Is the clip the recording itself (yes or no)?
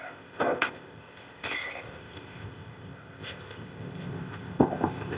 no